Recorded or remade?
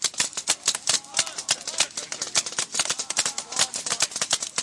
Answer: recorded